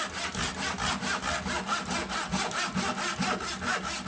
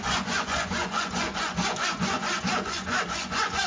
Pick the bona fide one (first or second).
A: first